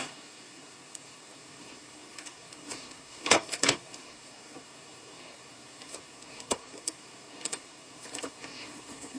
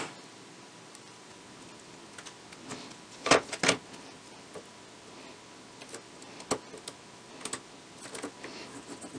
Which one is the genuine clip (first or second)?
second